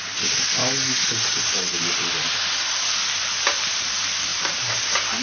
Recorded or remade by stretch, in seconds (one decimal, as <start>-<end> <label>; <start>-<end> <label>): 0.0-5.2 recorded